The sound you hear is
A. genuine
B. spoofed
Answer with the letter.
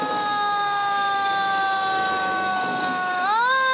B